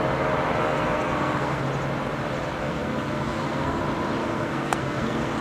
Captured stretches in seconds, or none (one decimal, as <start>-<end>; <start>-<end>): 0.0-0.6; 1.6-2.6; 3.8-4.2